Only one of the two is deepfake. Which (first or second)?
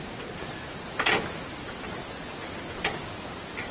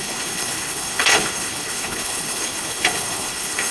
second